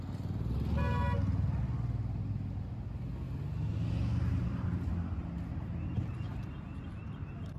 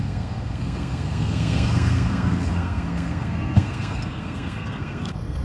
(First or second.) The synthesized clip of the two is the second